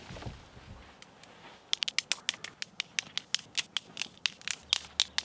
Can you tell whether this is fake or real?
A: real